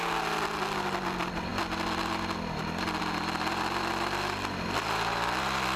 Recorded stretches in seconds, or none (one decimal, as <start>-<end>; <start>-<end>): 0.0-5.8